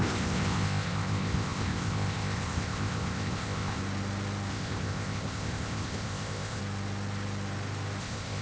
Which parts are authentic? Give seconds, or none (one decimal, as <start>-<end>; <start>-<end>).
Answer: 3.8-4.5; 6.6-8.0